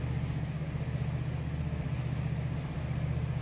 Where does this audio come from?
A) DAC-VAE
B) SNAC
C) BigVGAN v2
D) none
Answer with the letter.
D